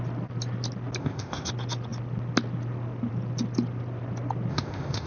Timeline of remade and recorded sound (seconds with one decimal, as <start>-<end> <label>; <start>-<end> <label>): 0.0-1.0 recorded; 1.0-1.5 remade; 1.5-4.5 recorded; 4.5-5.1 remade